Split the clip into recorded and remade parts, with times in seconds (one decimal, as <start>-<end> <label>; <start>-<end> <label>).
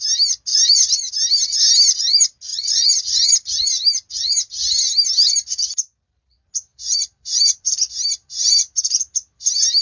0.0-0.5 recorded; 0.5-1.1 remade; 1.1-2.5 recorded; 2.5-3.3 remade; 3.3-6.7 recorded; 6.7-7.7 remade; 7.7-8.2 recorded; 8.2-9.0 remade; 9.0-9.8 recorded